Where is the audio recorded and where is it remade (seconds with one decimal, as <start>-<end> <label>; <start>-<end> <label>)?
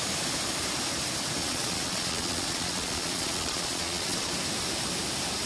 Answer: 0.0-1.4 recorded; 1.4-4.3 remade; 4.3-5.5 recorded